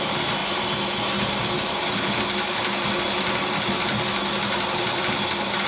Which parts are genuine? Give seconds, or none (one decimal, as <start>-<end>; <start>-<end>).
0.0-5.7